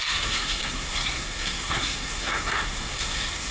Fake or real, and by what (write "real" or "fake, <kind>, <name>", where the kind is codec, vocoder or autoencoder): fake, codec, SNAC